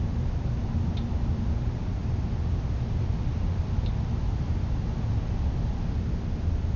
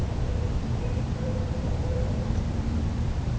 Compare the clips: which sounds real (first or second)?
first